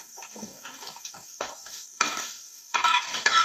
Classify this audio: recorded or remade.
remade